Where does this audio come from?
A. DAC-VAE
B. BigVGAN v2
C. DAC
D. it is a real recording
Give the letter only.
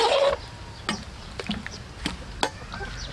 D